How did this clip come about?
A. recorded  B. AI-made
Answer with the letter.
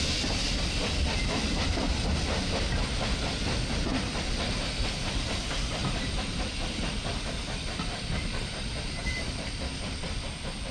B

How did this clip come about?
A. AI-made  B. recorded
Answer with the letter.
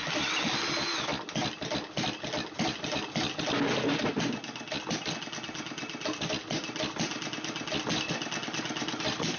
B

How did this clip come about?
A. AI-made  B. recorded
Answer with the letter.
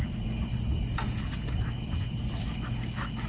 B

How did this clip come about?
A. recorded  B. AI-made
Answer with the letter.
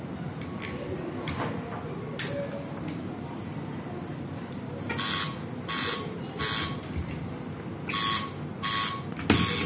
A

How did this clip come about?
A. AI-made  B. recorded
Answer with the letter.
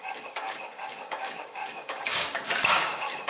A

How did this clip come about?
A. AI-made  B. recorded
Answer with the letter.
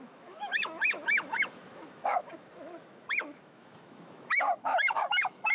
A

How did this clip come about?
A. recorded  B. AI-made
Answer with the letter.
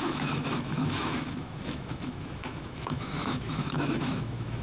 B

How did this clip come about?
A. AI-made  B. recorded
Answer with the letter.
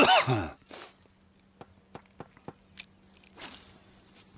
B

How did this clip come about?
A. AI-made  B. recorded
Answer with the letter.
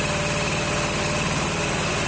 B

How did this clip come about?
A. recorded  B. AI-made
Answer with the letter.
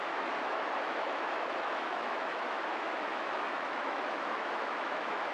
B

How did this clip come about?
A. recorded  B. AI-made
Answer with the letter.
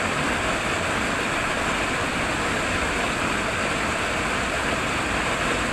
A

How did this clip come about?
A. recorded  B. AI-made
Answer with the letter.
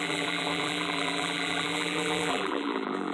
B